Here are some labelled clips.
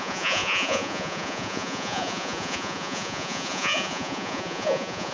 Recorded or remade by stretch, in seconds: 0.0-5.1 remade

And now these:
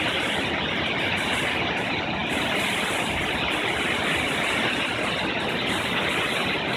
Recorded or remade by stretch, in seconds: 0.0-6.8 recorded

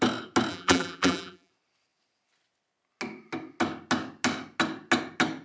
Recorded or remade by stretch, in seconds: 0.0-0.5 recorded; 0.5-1.5 remade; 1.5-5.4 recorded

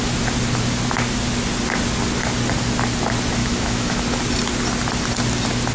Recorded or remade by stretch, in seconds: 0.0-3.4 recorded; 3.4-4.0 remade; 4.0-5.7 recorded

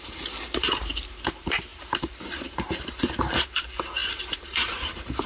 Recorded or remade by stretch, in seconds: 0.0-5.3 remade